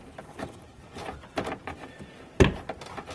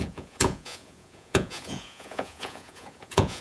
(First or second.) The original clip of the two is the first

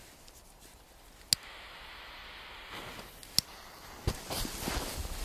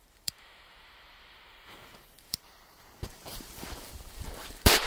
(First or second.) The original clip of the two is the first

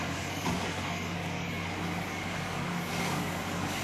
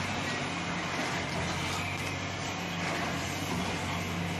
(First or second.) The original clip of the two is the second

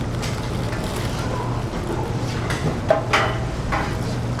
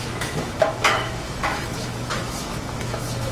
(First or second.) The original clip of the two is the first